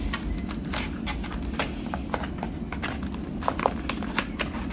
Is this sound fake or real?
real